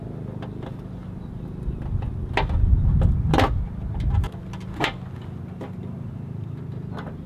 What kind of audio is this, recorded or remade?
recorded